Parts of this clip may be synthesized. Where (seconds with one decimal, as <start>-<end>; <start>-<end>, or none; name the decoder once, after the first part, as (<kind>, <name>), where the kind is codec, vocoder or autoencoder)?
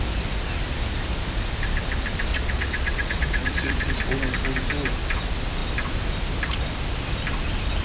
2.3-3.9 (vocoder, Vocos)